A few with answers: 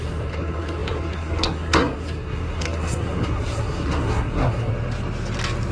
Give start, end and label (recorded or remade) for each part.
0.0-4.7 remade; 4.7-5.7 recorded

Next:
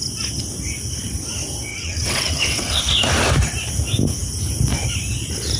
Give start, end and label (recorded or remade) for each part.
0.0-1.7 recorded; 1.7-2.8 remade; 2.8-5.6 recorded

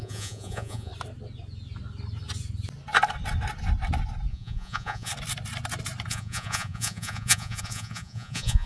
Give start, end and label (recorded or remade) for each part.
0.0-0.9 remade; 0.9-4.3 recorded; 4.3-5.1 remade; 5.1-6.1 recorded; 6.1-8.7 remade